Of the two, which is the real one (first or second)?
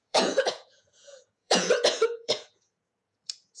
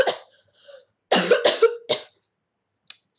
second